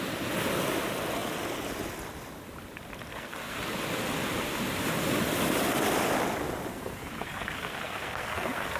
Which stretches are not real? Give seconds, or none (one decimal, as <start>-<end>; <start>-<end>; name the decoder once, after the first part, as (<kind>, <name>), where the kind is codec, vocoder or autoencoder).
3.1-3.6 (codec, SNAC); 6.7-8.8